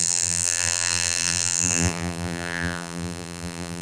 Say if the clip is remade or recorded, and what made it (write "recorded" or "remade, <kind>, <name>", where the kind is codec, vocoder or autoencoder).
remade, vocoder, BigVGAN v2